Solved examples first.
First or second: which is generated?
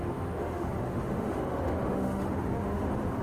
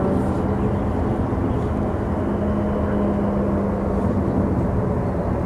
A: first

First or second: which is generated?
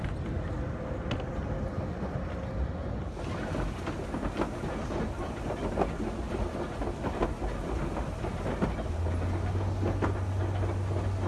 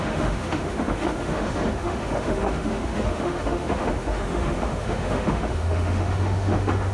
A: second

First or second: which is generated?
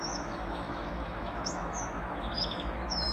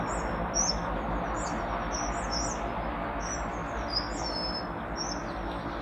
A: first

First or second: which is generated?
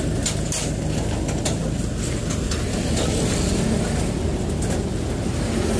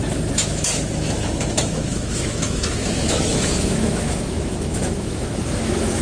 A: second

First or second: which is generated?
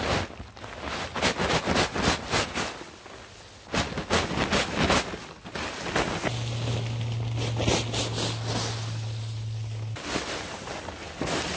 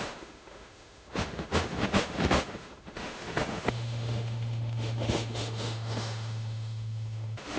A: second